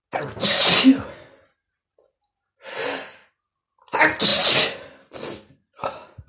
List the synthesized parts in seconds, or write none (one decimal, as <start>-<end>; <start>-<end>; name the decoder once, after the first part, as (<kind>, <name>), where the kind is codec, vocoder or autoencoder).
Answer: none